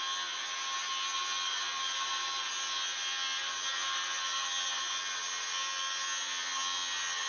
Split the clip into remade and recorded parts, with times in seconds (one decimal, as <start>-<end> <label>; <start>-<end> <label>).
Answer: 0.0-7.3 recorded